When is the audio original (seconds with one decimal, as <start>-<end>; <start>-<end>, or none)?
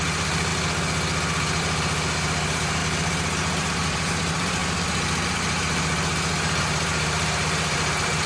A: 0.5-1.6; 2.8-3.9; 4.6-6.6